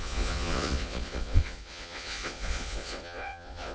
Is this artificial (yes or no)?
yes